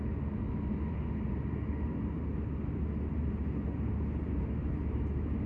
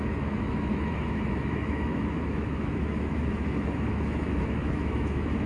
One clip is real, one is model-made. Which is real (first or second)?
first